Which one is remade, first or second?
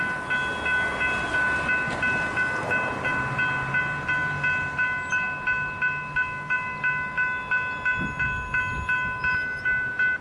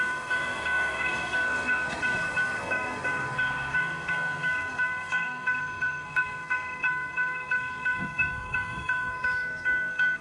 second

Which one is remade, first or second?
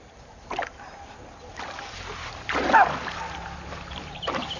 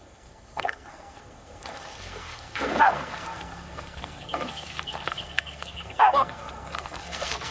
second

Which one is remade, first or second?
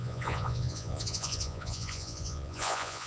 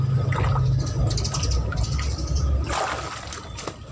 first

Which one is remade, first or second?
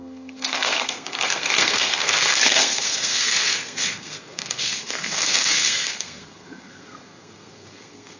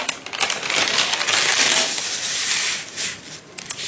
first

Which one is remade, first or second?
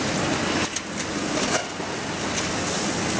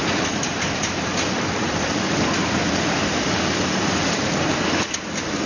second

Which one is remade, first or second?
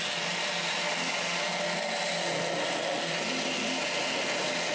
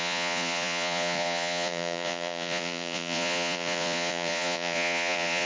second